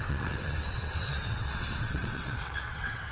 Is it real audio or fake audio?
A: fake